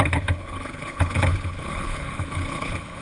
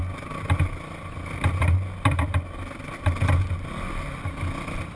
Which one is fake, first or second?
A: first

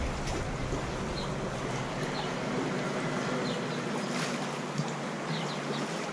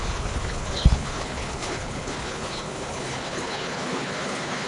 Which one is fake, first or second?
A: second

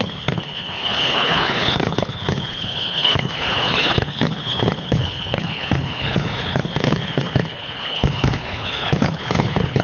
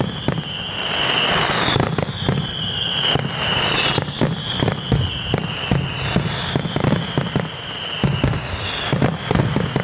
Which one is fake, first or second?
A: first